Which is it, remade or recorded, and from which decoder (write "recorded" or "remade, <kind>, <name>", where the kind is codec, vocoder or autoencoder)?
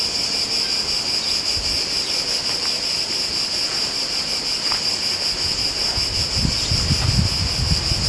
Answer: recorded